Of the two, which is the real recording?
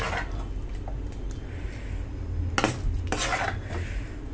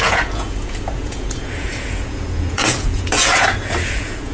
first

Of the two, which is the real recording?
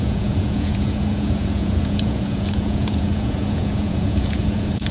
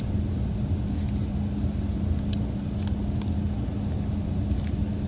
second